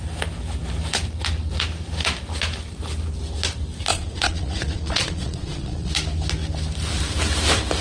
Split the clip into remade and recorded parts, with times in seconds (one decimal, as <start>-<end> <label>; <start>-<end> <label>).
0.0-3.9 recorded; 3.9-5.9 remade; 5.9-7.8 recorded